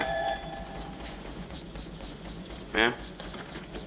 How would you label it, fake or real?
fake